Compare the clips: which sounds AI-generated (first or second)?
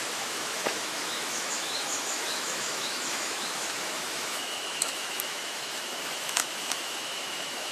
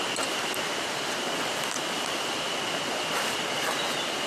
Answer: first